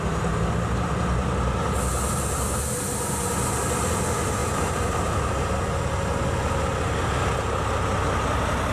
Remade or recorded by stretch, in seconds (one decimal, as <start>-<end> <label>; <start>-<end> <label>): 0.0-4.4 recorded; 4.4-5.3 remade; 5.3-8.7 recorded